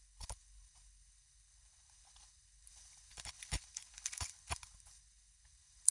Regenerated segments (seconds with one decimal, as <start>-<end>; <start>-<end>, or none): 0.0-5.9